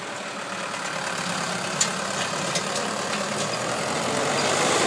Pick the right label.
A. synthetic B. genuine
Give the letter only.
B